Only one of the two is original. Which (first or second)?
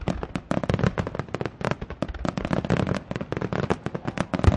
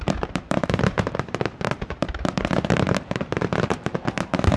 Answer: first